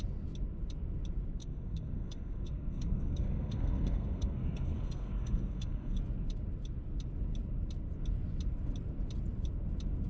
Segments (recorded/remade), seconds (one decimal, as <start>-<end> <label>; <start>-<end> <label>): 0.0-1.4 recorded; 1.4-6.0 remade; 6.0-10.1 recorded